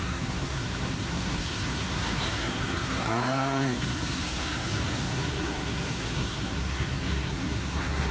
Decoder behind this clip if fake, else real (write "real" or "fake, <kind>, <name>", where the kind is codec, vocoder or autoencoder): fake, codec, SNAC